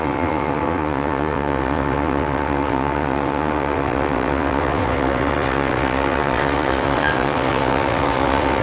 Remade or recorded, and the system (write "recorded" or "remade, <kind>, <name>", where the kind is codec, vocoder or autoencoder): remade, vocoder, WaveNeXt